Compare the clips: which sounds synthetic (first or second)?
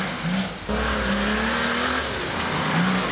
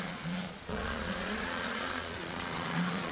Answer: second